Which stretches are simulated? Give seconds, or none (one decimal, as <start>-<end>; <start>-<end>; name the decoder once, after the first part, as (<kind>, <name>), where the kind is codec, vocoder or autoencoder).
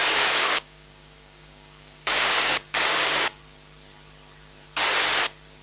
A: 0.0-3.4 (codec, DAC)